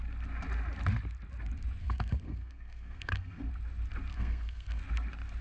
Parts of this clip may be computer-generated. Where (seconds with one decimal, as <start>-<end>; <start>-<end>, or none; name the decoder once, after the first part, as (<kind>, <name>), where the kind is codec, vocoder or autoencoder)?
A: 1.8-3.5 (codec, SNAC); 4.1-4.8